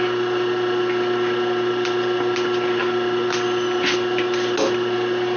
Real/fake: real